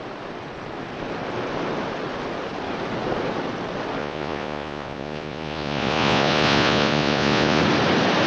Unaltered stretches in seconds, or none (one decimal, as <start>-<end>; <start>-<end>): 0.0-4.0; 7.6-8.3